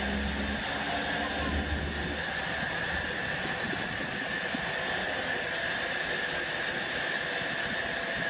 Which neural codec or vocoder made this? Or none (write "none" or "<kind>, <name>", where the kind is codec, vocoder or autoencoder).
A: none